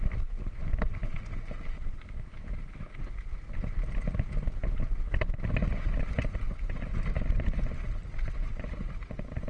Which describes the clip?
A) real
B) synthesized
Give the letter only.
A